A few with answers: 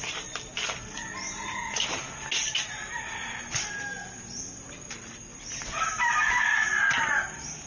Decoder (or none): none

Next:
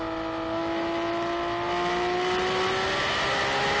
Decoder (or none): none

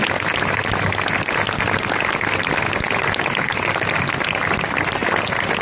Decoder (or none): none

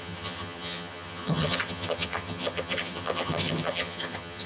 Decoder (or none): vocoder, HiFi-GAN